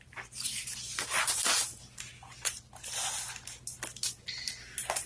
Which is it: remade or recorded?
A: recorded